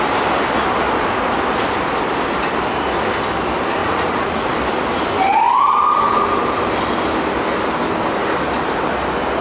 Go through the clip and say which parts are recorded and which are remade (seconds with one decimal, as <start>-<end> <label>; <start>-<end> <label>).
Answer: 0.0-3.8 recorded; 3.8-4.5 remade; 4.5-9.4 recorded